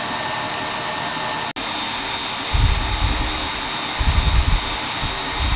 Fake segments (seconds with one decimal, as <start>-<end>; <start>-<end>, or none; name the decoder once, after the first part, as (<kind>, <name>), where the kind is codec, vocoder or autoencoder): none